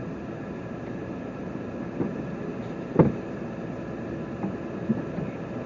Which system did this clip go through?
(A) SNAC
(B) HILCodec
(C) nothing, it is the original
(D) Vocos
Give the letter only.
C